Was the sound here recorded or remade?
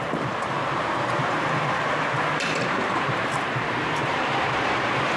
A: remade